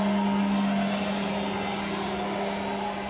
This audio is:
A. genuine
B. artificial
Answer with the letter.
A